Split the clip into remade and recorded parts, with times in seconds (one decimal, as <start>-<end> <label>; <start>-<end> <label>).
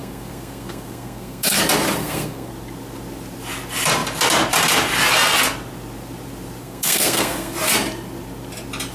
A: 0.0-1.6 remade; 1.6-2.0 recorded; 2.0-2.5 remade; 2.5-6.6 recorded; 6.6-7.5 remade; 7.5-8.9 recorded